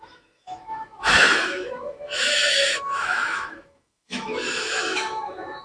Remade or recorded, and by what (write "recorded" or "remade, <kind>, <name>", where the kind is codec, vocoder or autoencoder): remade, autoencoder, DAC-VAE